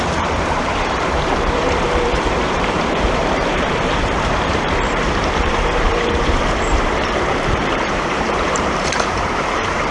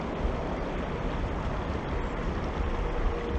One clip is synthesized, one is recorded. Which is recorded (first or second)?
second